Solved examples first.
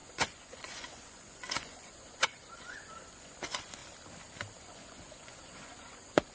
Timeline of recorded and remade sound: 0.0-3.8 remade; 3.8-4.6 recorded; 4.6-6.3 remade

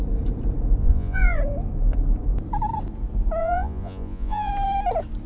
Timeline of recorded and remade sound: 0.0-0.8 recorded; 0.8-1.4 remade; 1.4-3.4 recorded; 3.4-4.5 remade; 4.5-5.3 recorded

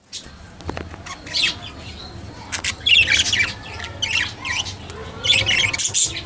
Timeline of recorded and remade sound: 0.0-6.3 recorded

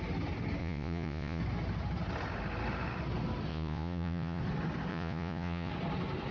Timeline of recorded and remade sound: 0.0-0.6 recorded; 0.6-1.4 remade; 1.4-3.5 recorded; 3.5-4.4 remade; 4.4-4.9 recorded; 4.9-5.7 remade; 5.7-6.3 recorded